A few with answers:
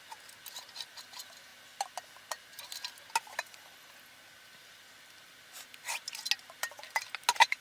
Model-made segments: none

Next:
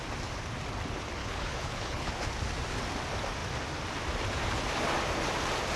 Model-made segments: 1.2-2.1 (codec, HILCodec)

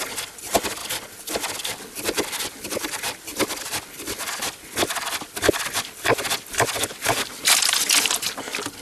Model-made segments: none

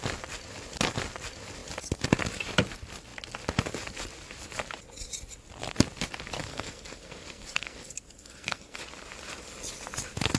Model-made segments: 6.4-8.8 (codec, SNAC)